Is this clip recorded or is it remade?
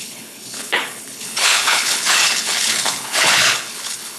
remade